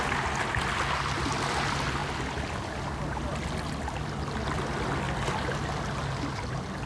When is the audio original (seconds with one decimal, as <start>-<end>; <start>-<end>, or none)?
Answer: 0.0-6.9